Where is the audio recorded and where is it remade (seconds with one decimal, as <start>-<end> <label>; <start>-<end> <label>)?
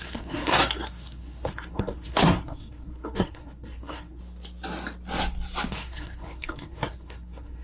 0.0-4.2 remade; 4.2-5.7 recorded; 5.7-7.6 remade